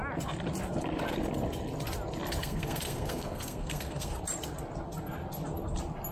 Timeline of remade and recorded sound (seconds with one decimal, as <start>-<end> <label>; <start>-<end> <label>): 0.0-2.4 recorded; 2.4-4.2 remade; 4.2-6.1 recorded